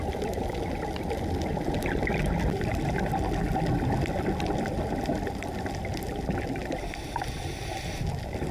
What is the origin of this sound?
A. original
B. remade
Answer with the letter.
A